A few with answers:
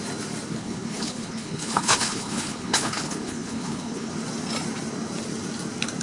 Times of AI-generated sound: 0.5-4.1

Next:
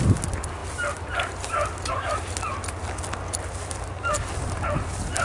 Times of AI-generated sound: none

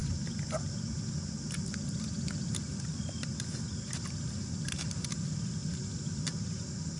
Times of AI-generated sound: none

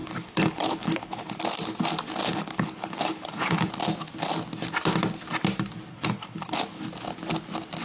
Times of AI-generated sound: 0.0-1.4; 2.2-3.7; 5.9-6.8